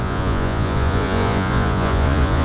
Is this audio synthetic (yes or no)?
yes